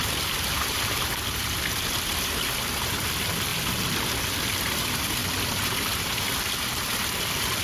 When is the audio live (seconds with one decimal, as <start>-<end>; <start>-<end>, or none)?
0.0-7.6